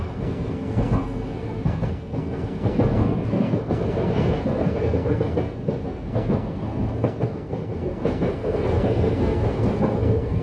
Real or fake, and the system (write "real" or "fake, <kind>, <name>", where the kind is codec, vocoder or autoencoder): fake, codec, SNAC